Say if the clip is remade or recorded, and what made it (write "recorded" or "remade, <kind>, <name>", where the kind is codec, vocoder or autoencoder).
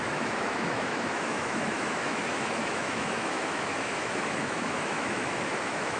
remade, autoencoder, DAC-VAE